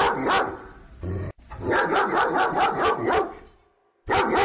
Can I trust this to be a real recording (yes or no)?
yes